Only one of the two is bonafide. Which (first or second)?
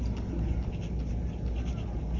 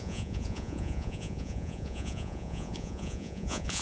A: first